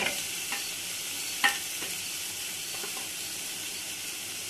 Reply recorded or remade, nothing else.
recorded